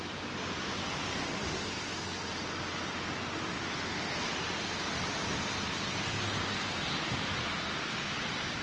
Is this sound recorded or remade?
recorded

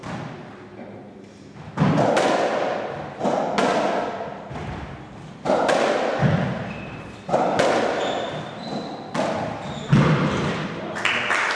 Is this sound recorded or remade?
recorded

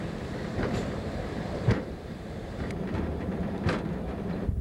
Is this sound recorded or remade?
remade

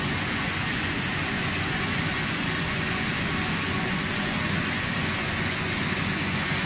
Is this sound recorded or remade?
remade